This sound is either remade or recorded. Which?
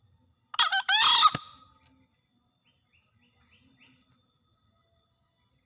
recorded